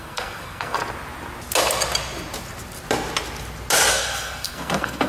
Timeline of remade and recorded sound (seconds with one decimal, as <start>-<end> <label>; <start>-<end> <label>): 0.0-0.8 remade; 0.8-3.9 recorded; 3.9-5.1 remade